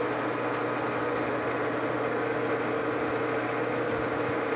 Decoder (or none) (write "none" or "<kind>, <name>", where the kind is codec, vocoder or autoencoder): none